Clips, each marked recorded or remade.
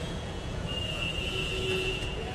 remade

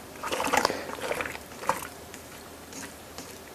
remade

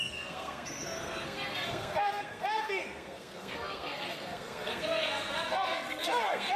remade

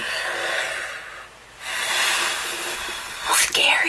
recorded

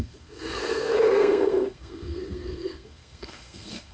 remade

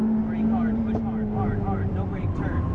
remade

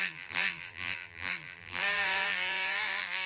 remade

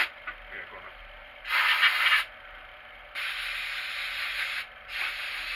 recorded